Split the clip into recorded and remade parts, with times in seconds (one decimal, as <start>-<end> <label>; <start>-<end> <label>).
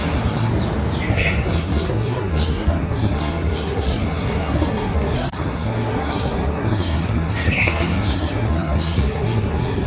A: 0.0-0.5 remade; 0.5-1.1 recorded; 1.1-9.9 remade